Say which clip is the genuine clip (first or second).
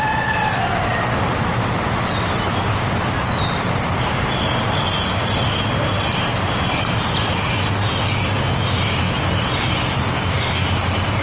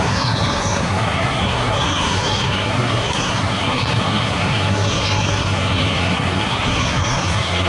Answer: first